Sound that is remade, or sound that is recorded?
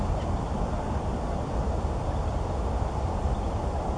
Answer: recorded